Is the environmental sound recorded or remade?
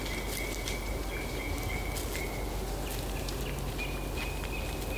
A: recorded